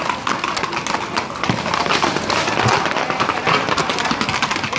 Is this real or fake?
real